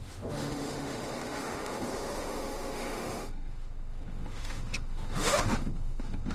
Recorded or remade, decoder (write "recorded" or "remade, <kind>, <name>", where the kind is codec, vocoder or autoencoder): remade, autoencoder, DAC-VAE